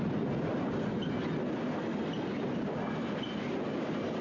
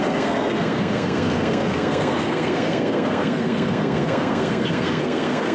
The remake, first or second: second